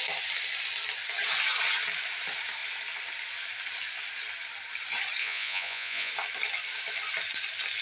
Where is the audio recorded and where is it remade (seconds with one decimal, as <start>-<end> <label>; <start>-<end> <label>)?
0.0-5.2 recorded; 5.2-6.1 remade; 6.1-7.8 recorded